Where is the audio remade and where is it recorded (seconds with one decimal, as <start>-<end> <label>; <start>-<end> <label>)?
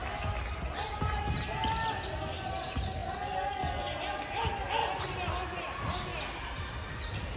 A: 0.0-7.4 recorded